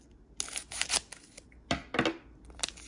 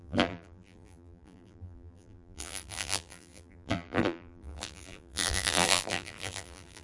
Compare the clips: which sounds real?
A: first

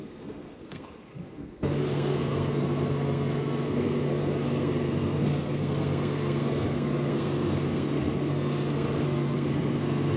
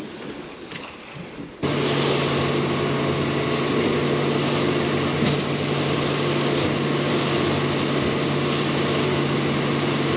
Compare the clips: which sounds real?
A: second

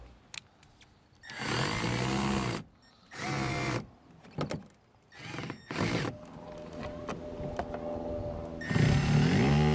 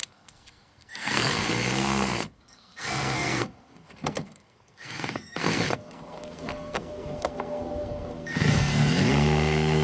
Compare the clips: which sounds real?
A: first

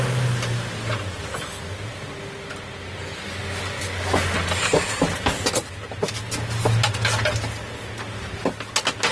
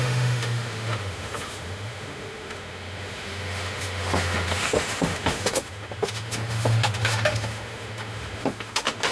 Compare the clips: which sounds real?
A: first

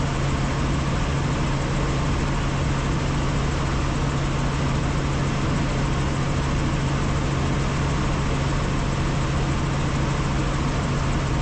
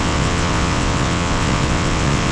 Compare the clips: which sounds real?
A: first